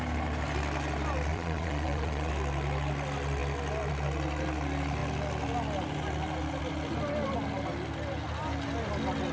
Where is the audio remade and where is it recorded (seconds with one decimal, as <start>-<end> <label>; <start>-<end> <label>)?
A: 0.0-1.3 recorded; 1.3-2.3 remade; 2.3-9.3 recorded